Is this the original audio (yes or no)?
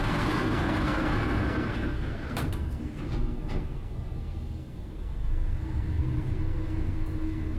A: no